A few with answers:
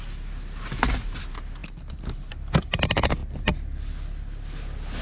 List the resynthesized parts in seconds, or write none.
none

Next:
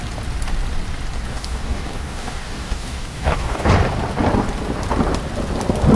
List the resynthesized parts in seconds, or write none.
1.3-3.7 (codec, DAC)

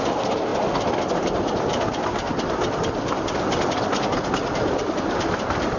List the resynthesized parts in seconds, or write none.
none

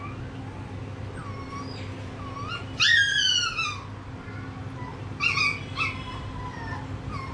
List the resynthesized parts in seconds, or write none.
none

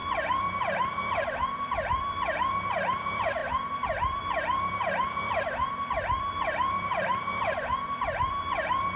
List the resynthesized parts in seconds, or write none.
none

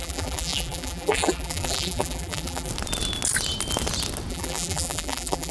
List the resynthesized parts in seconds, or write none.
0.0-2.7 (vocoder, BigVGAN v2); 4.3-5.5